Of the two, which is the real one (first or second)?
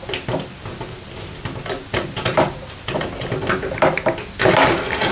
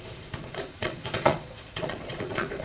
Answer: first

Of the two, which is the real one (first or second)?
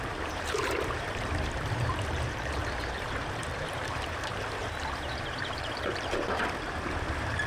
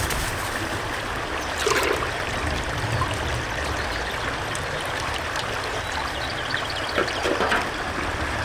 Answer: second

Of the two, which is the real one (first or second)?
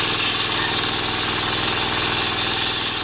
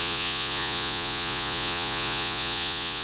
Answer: first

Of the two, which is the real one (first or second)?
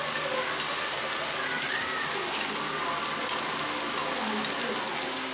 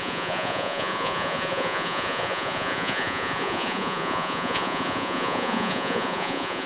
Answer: first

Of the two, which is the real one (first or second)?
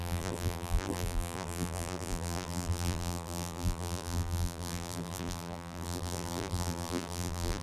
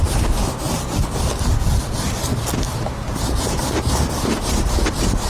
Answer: second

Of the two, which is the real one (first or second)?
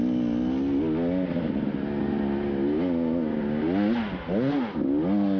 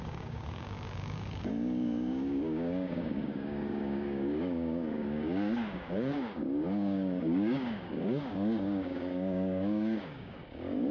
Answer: first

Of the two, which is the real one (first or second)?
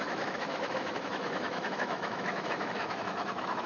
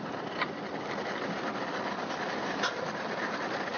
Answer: second